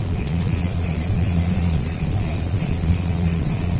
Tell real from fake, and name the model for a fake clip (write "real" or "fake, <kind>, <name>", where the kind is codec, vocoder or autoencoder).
fake, vocoder, Vocos